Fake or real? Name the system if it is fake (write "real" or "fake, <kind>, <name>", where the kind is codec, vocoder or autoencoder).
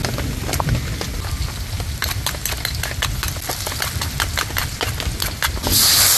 real